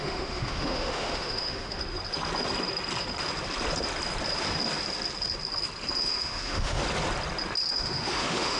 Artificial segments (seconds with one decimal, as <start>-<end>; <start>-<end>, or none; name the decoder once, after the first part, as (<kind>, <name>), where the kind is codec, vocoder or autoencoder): 0.0-1.8 (autoencoder, DAC-VAE); 6.0-6.8; 7.7-8.6